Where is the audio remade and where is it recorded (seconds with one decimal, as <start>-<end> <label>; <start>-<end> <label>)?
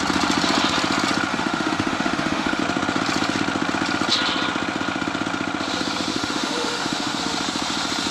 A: 0.0-1.3 recorded; 1.3-2.6 remade; 2.6-6.1 recorded; 6.1-7.2 remade; 7.2-8.1 recorded